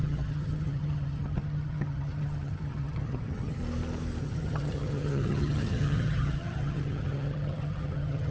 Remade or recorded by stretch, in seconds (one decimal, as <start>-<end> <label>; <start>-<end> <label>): 0.0-3.6 remade; 3.6-4.2 recorded; 4.2-8.3 remade